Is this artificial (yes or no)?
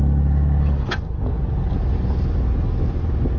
no